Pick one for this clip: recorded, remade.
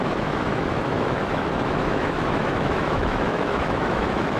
remade